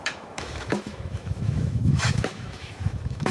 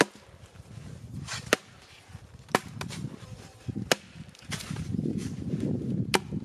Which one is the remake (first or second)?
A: first